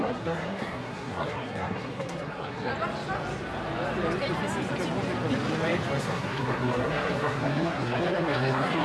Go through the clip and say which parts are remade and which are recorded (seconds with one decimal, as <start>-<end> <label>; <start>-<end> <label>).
0.0-2.7 remade; 2.7-6.0 recorded; 6.0-8.8 remade